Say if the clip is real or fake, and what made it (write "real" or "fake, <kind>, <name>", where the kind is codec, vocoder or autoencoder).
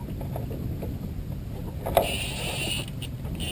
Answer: real